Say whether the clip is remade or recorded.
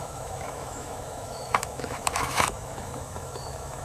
remade